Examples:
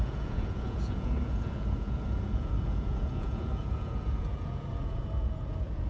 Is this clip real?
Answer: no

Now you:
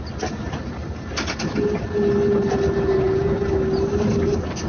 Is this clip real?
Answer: yes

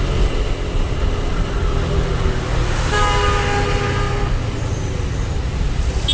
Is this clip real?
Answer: yes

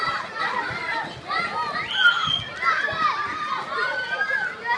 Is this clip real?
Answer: yes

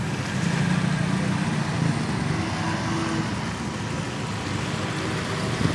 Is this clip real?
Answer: yes